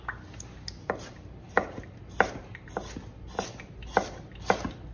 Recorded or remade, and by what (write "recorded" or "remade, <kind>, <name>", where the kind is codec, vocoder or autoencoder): recorded